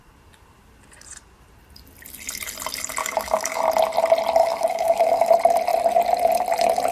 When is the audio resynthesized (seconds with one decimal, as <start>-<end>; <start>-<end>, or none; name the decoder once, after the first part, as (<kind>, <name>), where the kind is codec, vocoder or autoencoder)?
3.0-3.6 (codec, DAC); 4.4-5.3